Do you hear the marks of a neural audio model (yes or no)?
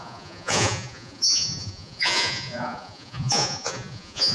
yes